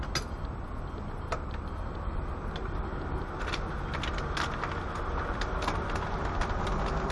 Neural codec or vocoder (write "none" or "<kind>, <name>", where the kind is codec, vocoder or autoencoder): none